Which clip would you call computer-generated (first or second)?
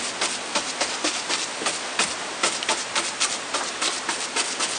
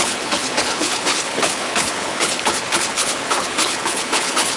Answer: second